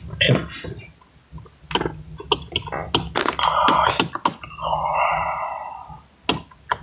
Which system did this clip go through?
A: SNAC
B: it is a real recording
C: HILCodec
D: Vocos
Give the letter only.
B